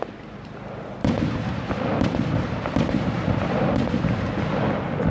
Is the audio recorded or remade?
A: remade